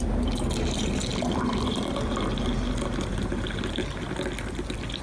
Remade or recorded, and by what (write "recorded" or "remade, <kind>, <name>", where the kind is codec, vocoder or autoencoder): recorded